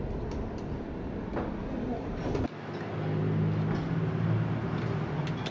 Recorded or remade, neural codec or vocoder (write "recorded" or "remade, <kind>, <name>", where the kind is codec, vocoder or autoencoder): recorded